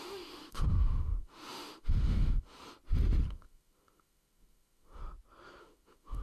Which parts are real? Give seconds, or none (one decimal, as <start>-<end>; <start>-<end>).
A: 2.6-3.3; 5.0-5.6